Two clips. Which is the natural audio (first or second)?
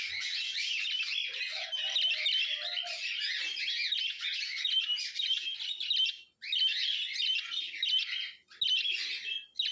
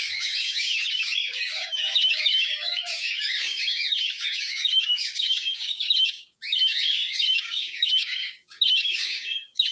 first